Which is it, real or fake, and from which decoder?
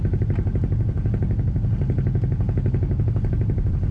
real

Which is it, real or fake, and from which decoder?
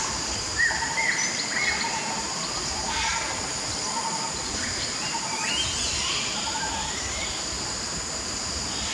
real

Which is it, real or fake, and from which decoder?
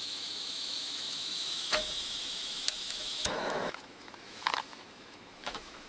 fake, autoencoder, DAC-VAE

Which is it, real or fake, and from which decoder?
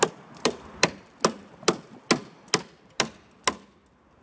real